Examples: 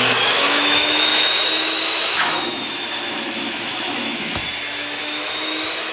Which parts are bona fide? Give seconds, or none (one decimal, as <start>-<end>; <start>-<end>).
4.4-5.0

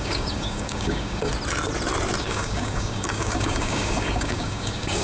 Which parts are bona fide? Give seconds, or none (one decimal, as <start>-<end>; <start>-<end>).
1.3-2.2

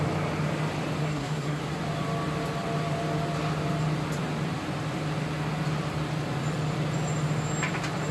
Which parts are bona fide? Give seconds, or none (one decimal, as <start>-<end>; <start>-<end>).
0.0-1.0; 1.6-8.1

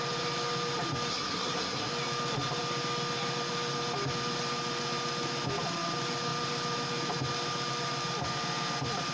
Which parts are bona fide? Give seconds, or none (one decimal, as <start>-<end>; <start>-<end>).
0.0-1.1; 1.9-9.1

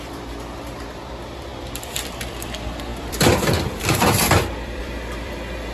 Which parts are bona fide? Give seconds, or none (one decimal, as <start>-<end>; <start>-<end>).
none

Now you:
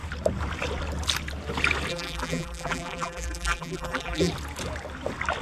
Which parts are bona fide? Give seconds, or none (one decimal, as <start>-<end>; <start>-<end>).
0.0-1.9; 4.3-5.4

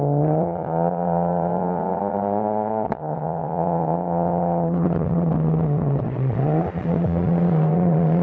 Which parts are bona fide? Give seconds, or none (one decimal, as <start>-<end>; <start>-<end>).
none